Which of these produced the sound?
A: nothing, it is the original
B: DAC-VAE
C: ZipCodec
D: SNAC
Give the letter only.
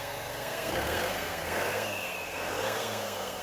D